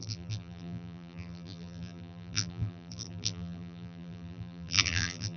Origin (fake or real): fake